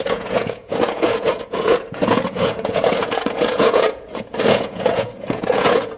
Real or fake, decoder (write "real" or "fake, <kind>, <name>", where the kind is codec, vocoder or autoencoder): fake, vocoder, Vocos